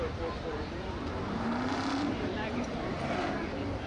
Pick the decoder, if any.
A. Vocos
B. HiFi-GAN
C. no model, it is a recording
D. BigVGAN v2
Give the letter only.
D